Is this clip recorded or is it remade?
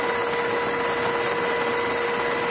recorded